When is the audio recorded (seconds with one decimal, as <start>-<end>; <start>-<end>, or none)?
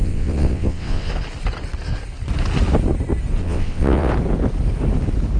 1.1-3.4; 4.1-5.4